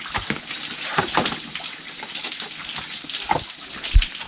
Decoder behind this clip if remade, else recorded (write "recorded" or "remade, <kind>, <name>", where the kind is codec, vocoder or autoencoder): recorded